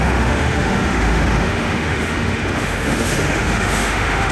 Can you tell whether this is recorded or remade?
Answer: remade